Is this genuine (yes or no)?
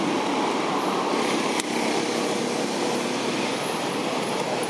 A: yes